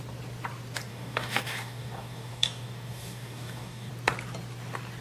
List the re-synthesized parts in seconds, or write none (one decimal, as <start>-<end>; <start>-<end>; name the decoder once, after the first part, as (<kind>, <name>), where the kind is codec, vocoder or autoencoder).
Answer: 0.9-3.9 (codec, DAC)